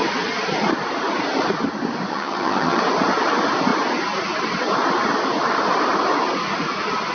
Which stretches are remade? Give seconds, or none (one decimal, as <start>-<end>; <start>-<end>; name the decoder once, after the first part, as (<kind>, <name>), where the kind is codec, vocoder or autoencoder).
2.1-2.8 (vocoder, HiFi-GAN)